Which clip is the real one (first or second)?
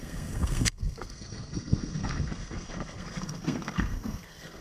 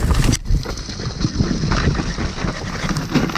second